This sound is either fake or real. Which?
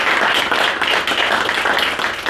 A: real